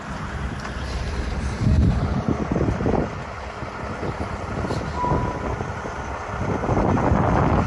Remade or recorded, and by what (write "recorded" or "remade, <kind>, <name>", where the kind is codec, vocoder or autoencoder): remade, vocoder, BigVGAN v2